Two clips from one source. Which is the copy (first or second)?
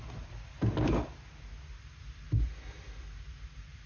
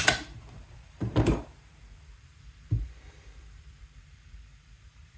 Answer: second